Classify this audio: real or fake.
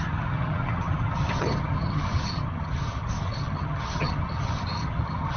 fake